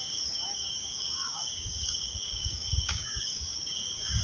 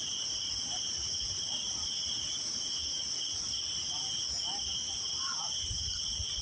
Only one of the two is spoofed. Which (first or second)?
first